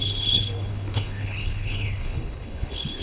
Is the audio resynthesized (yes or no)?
yes